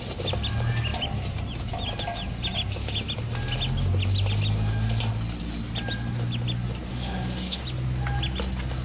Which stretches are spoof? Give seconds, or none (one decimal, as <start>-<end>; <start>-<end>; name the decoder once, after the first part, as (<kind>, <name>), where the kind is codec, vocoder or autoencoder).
6.9-7.6 (autoencoder, DAC-VAE)